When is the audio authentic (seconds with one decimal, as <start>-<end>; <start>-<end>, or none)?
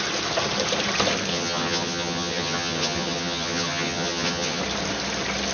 0.0-1.3; 4.6-5.5